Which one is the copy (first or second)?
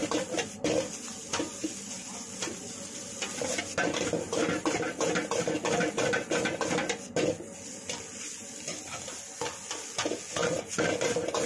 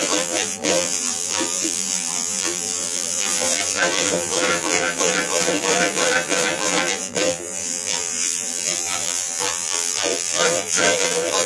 second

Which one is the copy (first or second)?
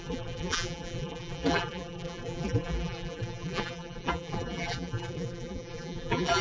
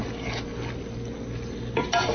first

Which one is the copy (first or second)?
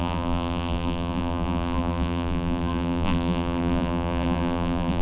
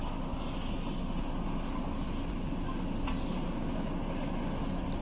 first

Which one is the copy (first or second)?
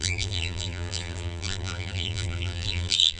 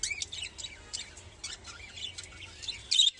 first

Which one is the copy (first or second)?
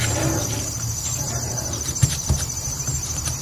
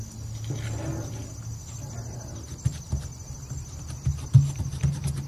first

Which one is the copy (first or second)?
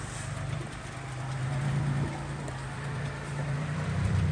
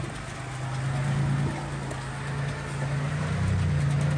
first